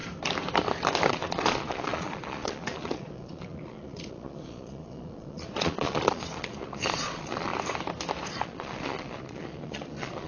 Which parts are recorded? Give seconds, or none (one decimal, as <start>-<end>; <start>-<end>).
0.0-1.1; 7.5-8.3